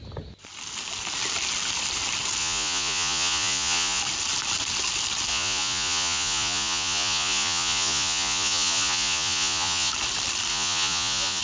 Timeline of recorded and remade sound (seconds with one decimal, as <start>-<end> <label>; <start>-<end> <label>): 0.0-2.4 recorded; 2.4-4.0 remade; 4.0-5.3 recorded; 5.3-9.9 remade; 9.9-10.5 recorded; 10.5-11.4 remade

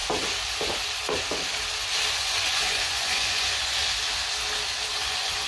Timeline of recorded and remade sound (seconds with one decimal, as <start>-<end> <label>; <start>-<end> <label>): 0.0-2.1 recorded; 2.1-3.8 remade; 3.8-4.9 recorded; 4.9-5.5 remade

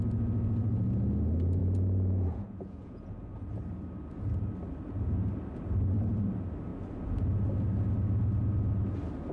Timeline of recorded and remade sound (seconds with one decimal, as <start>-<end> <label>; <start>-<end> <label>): 0.0-1.6 recorded; 1.6-3.5 remade; 3.5-9.3 recorded

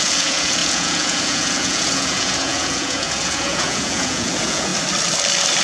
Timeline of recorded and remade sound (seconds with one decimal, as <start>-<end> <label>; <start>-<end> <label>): 0.0-4.7 remade; 4.7-5.6 recorded

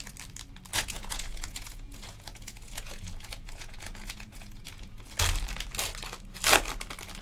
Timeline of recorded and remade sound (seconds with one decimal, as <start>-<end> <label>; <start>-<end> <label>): 0.0-0.7 recorded; 0.7-5.0 remade; 5.0-7.2 recorded

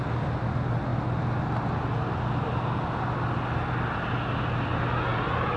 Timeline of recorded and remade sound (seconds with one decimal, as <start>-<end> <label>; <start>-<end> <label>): 0.0-5.6 recorded

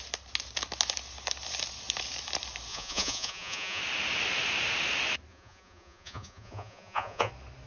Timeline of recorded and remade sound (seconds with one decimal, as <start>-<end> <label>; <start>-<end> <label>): 0.0-2.7 recorded; 2.7-3.8 remade; 3.8-5.3 recorded; 5.3-7.3 remade; 7.3-7.7 recorded